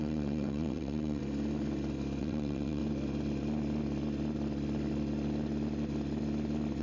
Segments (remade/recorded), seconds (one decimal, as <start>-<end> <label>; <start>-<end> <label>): 0.0-1.2 remade; 1.2-2.2 recorded; 2.2-2.8 remade; 2.8-6.8 recorded